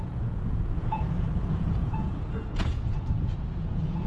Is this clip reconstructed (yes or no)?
yes